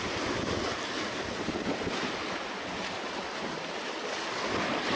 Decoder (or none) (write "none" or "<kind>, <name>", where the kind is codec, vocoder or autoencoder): none